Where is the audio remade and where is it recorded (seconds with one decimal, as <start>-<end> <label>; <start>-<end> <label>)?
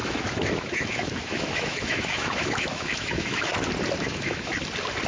0.0-3.5 remade; 3.5-4.0 recorded; 4.0-4.5 remade; 4.5-5.1 recorded